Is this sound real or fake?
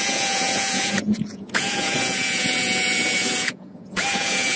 fake